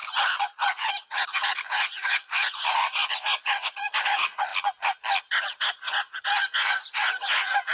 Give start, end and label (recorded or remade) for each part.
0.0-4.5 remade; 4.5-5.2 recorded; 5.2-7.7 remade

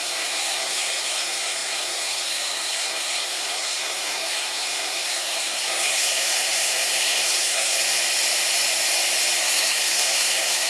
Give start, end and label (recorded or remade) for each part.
0.0-7.9 remade; 7.9-9.4 recorded; 9.4-10.7 remade

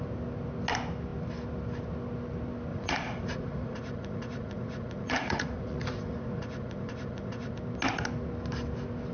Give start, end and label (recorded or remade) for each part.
0.0-2.7 recorded; 2.7-7.5 remade; 7.5-9.1 recorded

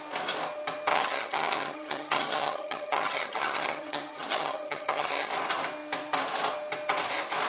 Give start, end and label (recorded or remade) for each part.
0.0-0.9 recorded; 0.9-5.3 remade; 5.3-7.5 recorded

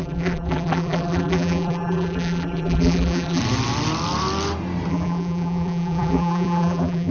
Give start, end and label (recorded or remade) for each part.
0.0-3.4 remade; 3.4-4.9 recorded; 4.9-7.1 remade

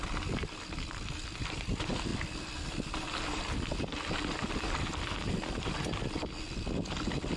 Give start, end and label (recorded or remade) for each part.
0.0-7.4 recorded

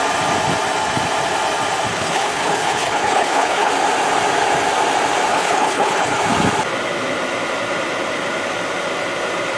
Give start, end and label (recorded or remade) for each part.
0.0-1.9 recorded; 1.9-3.7 remade; 3.7-5.3 recorded; 5.3-6.2 remade; 6.2-9.6 recorded

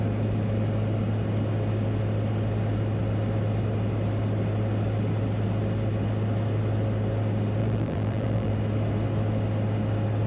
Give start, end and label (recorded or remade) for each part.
0.0-7.6 recorded; 7.6-8.5 remade; 8.5-10.3 recorded